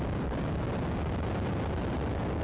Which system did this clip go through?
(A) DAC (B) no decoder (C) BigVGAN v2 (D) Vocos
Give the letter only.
B